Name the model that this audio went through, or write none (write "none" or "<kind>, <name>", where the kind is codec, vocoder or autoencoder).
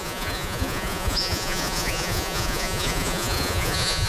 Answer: vocoder, Vocos